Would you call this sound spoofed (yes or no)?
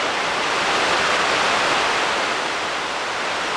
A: no